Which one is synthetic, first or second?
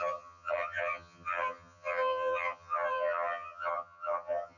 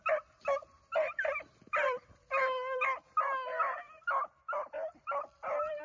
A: first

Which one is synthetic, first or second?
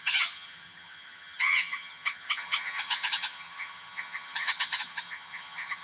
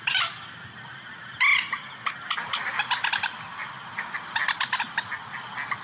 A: first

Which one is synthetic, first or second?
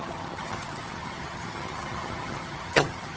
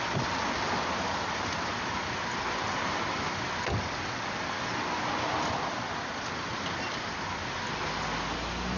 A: first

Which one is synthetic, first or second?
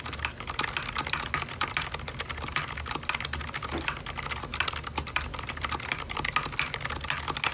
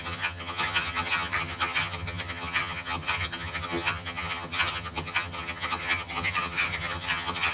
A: second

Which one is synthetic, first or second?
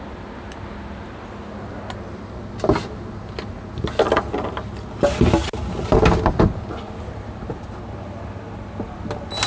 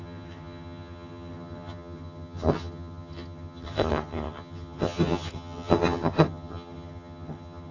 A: second